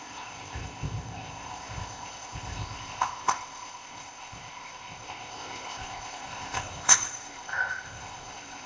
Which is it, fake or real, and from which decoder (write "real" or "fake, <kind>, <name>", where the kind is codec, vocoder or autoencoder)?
fake, codec, ZipCodec